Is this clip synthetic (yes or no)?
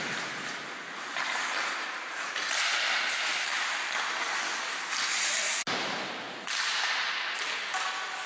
no